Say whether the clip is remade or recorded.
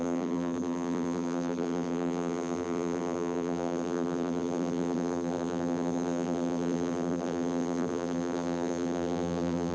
remade